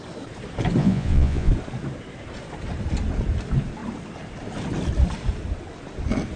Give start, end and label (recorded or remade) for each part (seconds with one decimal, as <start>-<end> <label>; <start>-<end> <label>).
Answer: 0.0-0.8 recorded; 0.8-1.5 remade; 1.5-6.4 recorded